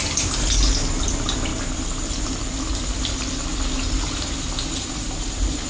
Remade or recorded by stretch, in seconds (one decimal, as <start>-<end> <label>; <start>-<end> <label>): 0.0-5.7 recorded